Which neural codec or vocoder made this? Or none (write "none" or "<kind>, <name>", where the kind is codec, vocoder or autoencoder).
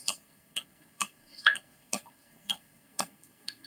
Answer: codec, SNAC